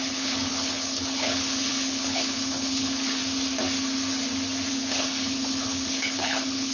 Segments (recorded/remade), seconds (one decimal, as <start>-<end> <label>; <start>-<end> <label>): 0.0-3.2 remade; 3.2-4.7 recorded; 4.7-6.7 remade